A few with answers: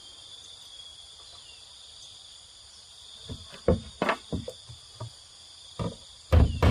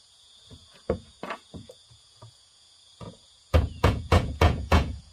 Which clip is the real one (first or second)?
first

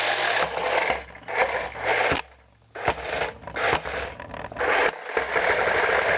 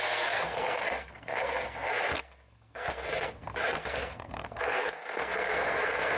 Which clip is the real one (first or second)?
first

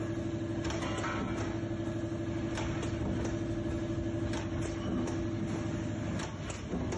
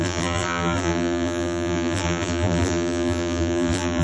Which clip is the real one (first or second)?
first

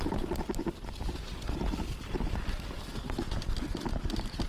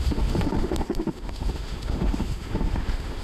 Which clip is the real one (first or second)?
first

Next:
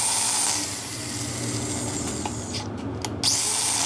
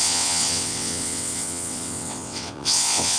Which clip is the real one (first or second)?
first